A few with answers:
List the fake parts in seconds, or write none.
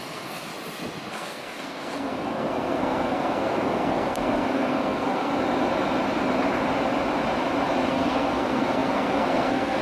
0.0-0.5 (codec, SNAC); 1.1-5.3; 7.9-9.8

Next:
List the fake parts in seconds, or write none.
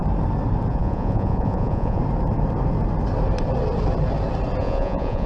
0.7-2.0 (vocoder, Vocos); 4.6-5.3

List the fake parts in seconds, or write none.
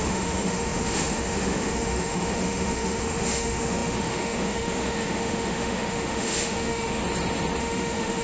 0.0-7.0 (autoencoder, DAC-VAE); 7.6-8.2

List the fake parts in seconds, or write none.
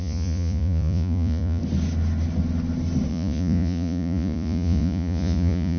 0.0-1.6 (vocoder, Vocos); 3.1-5.8